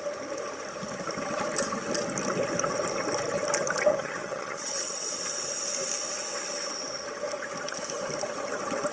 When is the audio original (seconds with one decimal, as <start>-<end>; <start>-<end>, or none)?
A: 0.0-3.9; 5.2-8.9